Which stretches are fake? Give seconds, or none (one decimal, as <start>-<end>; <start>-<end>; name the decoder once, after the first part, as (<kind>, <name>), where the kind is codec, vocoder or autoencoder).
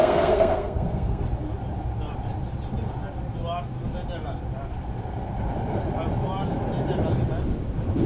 0.0-1.2 (codec, SNAC)